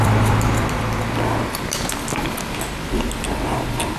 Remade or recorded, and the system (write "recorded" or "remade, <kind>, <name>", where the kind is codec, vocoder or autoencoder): remade, vocoder, BigVGAN v2